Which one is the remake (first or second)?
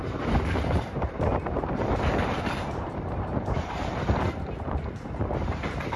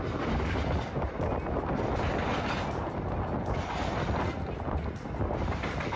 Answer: first